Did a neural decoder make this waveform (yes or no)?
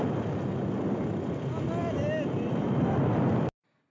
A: no